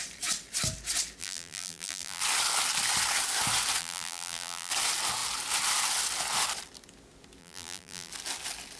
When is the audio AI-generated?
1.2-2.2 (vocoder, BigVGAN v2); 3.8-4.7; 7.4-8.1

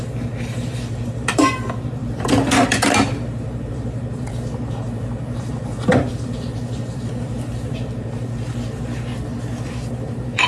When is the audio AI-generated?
0.0-9.1 (vocoder, BigVGAN v2); 9.7-10.5

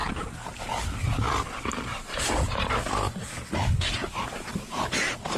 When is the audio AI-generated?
1.9-2.7 (vocoder, BigVGAN v2); 4.5-5.4

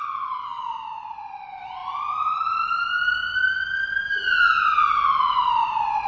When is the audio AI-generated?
none